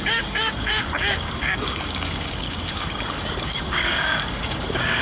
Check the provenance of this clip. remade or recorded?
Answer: remade